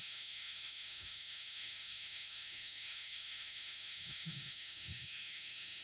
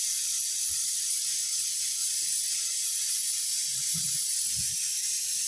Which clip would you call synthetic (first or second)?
first